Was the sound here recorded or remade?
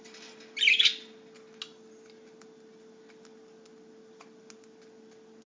recorded